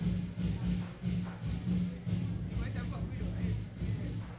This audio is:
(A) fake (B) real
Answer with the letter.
B